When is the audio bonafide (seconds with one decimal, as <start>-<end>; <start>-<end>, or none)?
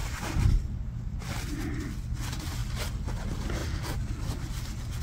1.2-3.6